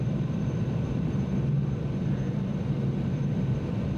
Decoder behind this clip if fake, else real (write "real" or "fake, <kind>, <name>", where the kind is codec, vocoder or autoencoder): fake, vocoder, BigVGAN v2